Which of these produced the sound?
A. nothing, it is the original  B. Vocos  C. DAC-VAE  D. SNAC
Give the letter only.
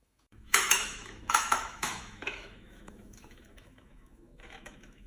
C